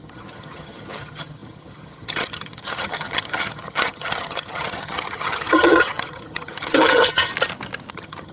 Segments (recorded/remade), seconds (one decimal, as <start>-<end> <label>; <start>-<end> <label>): 0.0-7.3 remade; 7.3-7.9 recorded; 7.9-8.3 remade